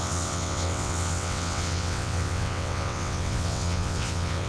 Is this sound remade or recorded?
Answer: remade